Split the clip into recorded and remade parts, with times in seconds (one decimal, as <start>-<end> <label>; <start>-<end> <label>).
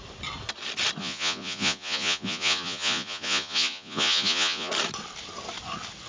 0.0-1.0 recorded; 1.0-4.7 remade; 4.7-6.1 recorded